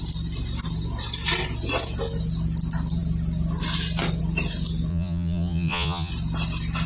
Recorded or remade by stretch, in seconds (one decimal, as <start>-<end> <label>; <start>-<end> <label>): 0.0-4.9 recorded; 4.9-6.1 remade; 6.1-6.9 recorded